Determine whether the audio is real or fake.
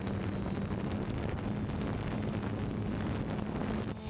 real